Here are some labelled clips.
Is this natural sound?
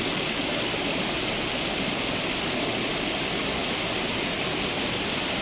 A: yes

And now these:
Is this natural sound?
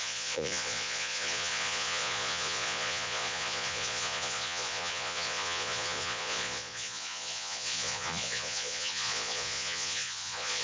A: no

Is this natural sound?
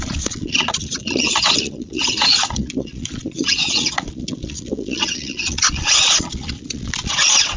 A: no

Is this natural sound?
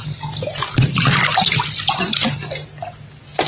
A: yes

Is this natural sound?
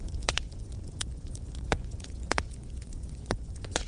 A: no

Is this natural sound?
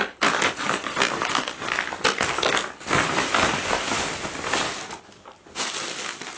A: yes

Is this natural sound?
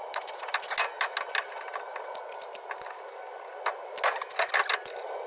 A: yes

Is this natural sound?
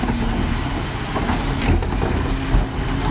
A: yes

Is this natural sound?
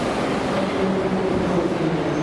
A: yes